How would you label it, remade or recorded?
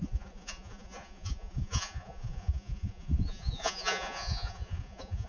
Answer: remade